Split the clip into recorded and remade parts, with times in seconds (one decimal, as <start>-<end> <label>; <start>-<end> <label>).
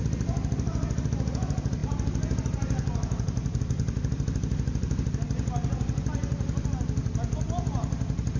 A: 0.0-8.4 recorded